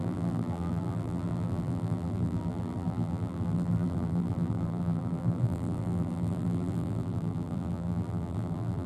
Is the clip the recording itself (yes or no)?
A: no